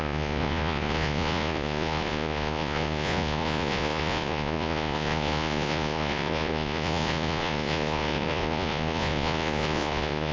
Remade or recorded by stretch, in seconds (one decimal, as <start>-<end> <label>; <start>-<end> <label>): 0.0-10.3 remade